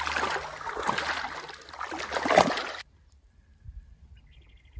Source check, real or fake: real